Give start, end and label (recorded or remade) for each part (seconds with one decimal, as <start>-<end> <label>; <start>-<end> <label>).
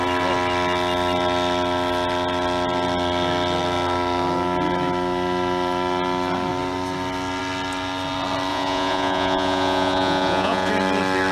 0.0-8.5 recorded; 8.5-10.7 remade; 10.7-11.3 recorded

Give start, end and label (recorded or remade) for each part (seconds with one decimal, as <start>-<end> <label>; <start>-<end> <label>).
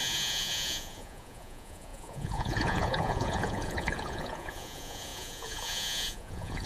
0.0-6.7 remade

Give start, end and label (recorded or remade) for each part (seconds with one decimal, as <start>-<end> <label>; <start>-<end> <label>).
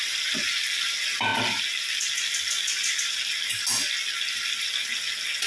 0.0-5.5 recorded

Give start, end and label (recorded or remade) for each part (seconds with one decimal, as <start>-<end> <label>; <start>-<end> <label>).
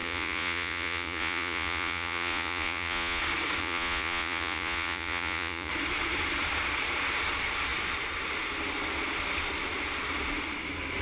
0.0-3.2 remade; 3.2-3.6 recorded; 3.6-5.7 remade; 5.7-11.0 recorded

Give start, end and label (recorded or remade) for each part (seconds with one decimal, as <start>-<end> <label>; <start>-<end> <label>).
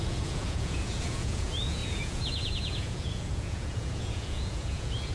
0.0-5.1 remade